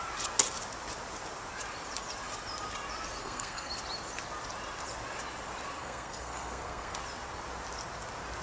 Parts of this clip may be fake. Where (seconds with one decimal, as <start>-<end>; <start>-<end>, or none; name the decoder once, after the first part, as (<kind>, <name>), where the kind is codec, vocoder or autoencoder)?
3.2-3.7 (codec, SNAC); 5.8-7.0